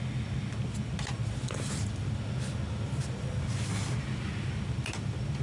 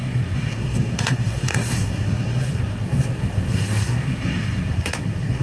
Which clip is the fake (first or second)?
second